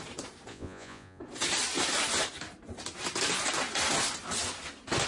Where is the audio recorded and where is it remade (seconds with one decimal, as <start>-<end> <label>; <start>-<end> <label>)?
0.0-0.5 recorded; 0.5-1.2 remade; 1.2-5.1 recorded